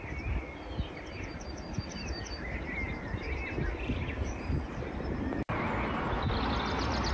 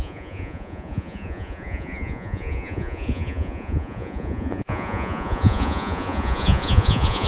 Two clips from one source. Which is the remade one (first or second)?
second